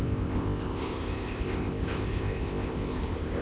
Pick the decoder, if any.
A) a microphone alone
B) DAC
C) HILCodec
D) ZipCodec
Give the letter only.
D